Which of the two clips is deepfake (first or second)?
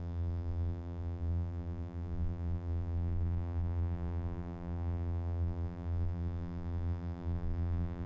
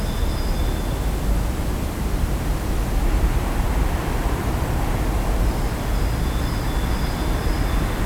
first